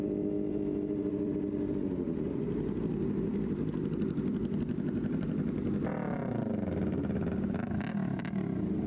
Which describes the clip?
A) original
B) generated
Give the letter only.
A